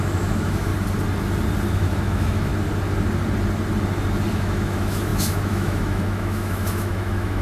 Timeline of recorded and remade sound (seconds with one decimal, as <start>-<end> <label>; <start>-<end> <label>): 0.0-0.7 remade; 0.7-1.7 recorded; 1.7-2.5 remade; 2.5-4.3 recorded; 4.3-7.4 remade